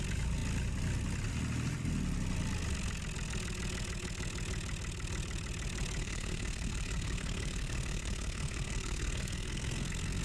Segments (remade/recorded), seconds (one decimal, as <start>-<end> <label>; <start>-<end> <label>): 0.0-6.0 recorded; 6.0-10.2 remade